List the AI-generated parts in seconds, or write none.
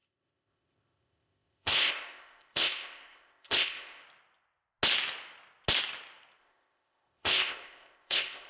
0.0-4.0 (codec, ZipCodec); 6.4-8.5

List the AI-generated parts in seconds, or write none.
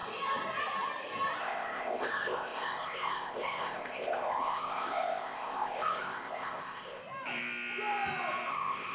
1.4-7.0 (codec, ZipCodec); 8.5-8.9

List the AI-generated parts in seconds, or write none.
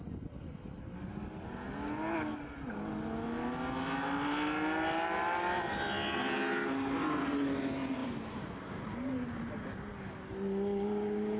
none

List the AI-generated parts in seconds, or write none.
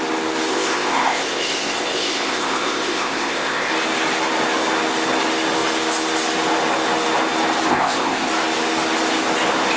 0.5-3.7 (codec, ZipCodec); 7.7-8.3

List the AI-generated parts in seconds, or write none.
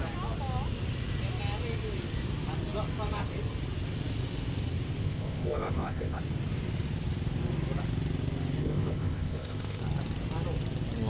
5.0-6.2 (codec, ZipCodec); 8.6-9.8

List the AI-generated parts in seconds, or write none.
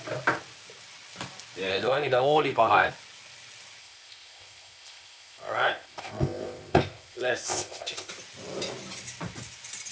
1.7-2.9 (codec, ZipCodec); 3.8-8.1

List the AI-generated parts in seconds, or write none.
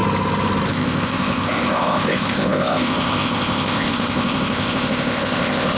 0.7-5.8 (codec, ZipCodec)